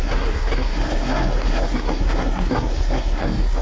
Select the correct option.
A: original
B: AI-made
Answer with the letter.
B